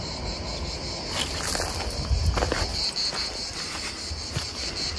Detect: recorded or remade recorded